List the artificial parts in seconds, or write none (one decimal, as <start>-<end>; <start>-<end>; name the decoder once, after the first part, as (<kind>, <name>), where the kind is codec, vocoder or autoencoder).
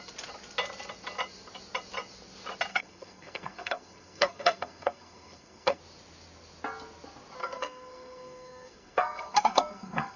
2.7-5.8 (codec, SNAC); 7.4-10.2